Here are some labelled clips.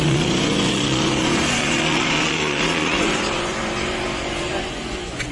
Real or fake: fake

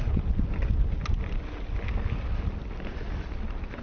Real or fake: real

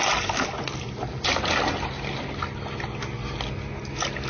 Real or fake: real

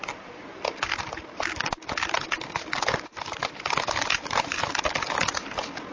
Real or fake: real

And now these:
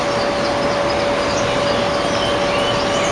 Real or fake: real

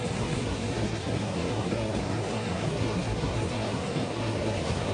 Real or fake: fake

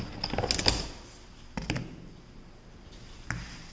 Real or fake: real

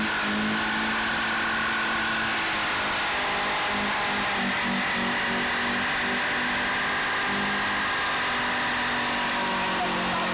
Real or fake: real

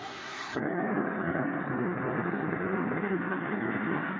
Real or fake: fake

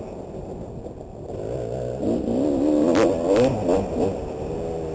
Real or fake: real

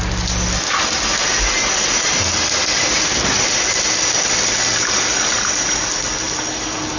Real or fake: real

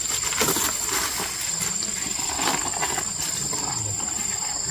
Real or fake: real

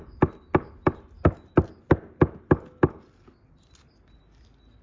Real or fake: real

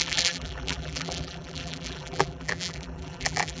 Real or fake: fake